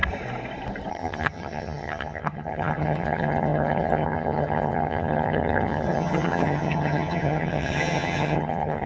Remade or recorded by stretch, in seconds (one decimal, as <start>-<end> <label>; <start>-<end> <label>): 0.0-0.9 recorded; 0.9-8.9 remade